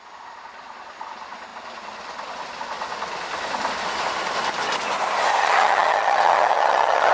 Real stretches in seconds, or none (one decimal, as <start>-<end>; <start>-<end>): 0.0-5.4